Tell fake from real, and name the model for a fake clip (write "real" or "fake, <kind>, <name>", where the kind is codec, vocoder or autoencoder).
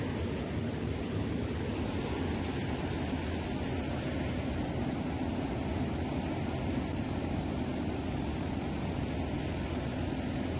real